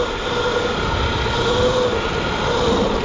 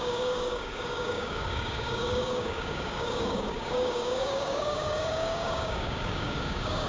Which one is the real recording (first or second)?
first